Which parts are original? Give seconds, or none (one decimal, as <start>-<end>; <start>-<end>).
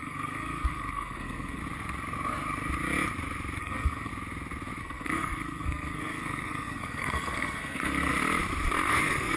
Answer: 1.6-3.6; 4.1-4.8; 8.1-8.9